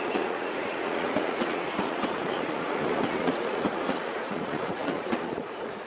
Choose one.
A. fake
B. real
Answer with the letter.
A